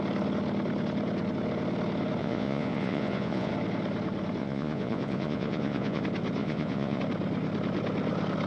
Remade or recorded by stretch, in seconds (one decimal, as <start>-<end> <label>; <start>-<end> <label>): 0.0-2.2 recorded; 2.2-3.5 remade; 3.5-4.4 recorded; 4.4-6.0 remade; 6.0-6.4 recorded; 6.4-7.0 remade; 7.0-8.5 recorded